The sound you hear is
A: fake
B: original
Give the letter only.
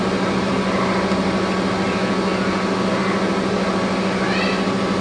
B